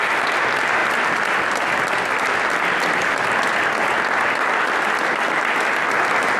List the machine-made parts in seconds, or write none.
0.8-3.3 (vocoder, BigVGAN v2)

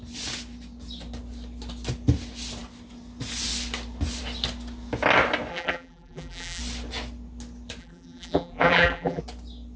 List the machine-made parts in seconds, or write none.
5.5-6.6 (vocoder, BigVGAN v2); 7.8-9.2

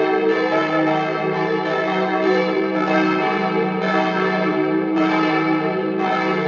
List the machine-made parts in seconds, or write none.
0.0-6.5 (vocoder, BigVGAN v2)